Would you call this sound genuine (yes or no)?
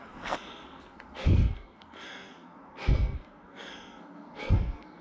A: no